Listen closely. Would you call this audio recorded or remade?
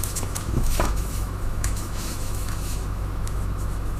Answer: remade